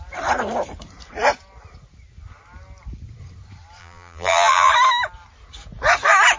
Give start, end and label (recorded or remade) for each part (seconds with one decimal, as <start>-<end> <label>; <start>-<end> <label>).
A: 0.0-3.8 recorded; 3.8-4.7 remade; 4.7-6.4 recorded

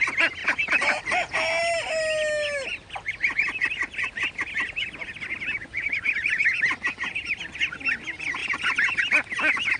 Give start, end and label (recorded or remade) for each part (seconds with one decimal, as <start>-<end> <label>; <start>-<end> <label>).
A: 0.0-0.4 recorded; 0.4-1.0 remade; 1.0-8.4 recorded; 8.4-9.0 remade; 9.0-9.8 recorded

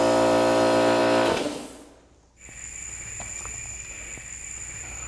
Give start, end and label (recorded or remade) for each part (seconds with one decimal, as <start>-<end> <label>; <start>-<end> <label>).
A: 0.0-5.1 recorded

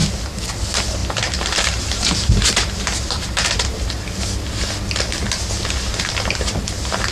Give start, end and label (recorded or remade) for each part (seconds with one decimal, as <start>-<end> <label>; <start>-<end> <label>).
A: 0.0-1.0 recorded; 1.0-4.2 remade; 4.2-7.1 recorded

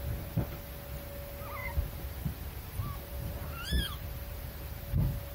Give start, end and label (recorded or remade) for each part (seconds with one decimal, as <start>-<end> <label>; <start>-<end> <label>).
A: 0.0-1.6 recorded; 1.6-4.8 remade; 4.8-5.3 recorded

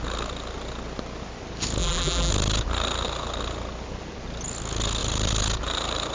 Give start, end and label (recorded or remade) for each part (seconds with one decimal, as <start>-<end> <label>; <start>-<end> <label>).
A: 0.0-1.8 recorded; 1.8-2.3 remade; 2.3-6.1 recorded

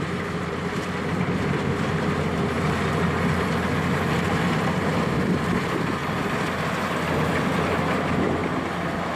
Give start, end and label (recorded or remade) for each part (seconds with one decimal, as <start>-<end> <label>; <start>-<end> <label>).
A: 0.0-6.0 remade; 6.0-7.3 recorded; 7.3-8.4 remade; 8.4-9.2 recorded